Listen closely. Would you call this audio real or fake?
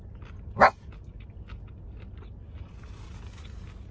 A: real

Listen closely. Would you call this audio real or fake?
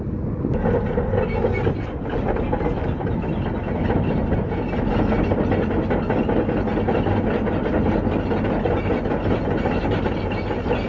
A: real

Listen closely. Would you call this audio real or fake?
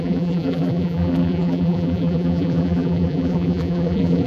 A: fake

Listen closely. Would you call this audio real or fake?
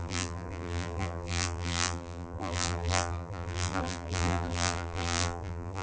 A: fake